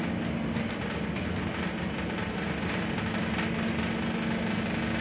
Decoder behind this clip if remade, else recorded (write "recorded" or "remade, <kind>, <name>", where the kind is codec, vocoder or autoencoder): recorded